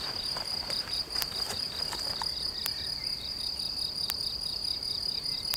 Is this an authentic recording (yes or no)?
no